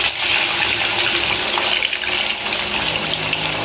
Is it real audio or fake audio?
real